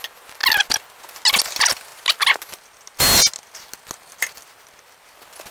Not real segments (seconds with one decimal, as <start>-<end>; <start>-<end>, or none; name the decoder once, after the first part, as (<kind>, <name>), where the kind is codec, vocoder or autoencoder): none